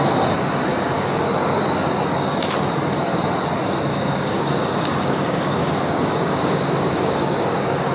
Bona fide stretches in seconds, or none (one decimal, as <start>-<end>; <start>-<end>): 0.0-0.7; 1.6-3.9